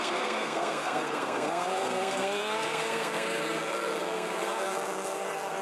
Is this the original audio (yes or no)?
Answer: no